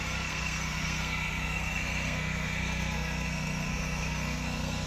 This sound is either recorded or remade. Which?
remade